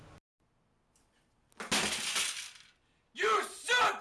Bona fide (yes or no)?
yes